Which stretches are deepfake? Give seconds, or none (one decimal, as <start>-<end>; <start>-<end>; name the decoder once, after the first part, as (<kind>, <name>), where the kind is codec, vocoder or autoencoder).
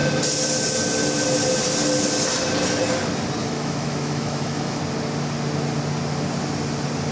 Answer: 3.4-4.8 (autoencoder, DAC-VAE)